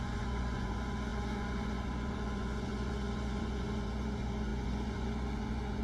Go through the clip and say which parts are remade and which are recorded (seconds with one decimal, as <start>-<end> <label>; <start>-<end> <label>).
0.0-5.8 remade